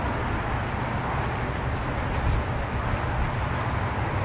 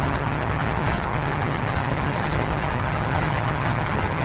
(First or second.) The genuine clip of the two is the first